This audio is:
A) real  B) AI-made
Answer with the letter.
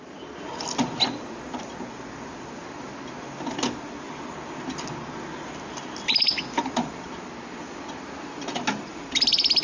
A